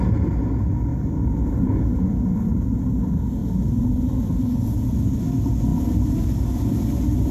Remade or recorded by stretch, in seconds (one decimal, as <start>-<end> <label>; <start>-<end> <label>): 0.0-7.3 recorded